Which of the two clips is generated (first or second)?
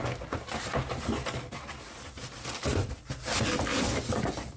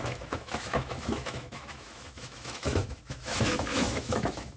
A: second